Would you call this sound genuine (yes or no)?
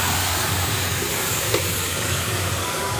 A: no